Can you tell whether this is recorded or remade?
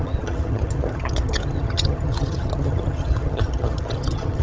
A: remade